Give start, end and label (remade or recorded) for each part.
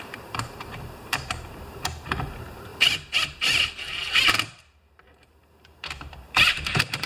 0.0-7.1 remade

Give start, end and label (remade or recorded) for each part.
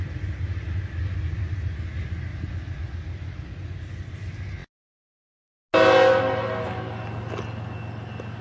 0.0-8.4 recorded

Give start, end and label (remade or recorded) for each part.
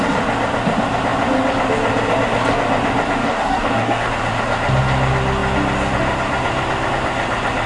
0.0-3.2 recorded; 3.2-4.1 remade; 4.1-7.7 recorded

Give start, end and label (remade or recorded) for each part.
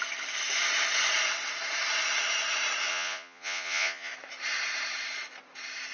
0.0-2.9 recorded; 2.9-4.1 remade; 4.1-5.9 recorded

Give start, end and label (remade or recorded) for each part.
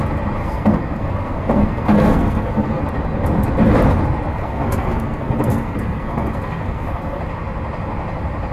0.0-0.4 recorded; 0.4-2.8 remade; 2.8-4.3 recorded; 4.3-7.2 remade; 7.2-8.5 recorded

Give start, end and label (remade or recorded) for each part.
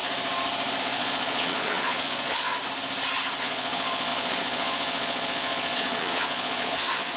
0.0-0.8 recorded; 0.8-2.5 remade; 2.5-3.4 recorded; 3.4-7.2 remade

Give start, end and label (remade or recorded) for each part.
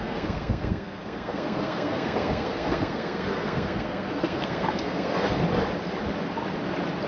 0.0-5.4 remade; 5.4-7.1 recorded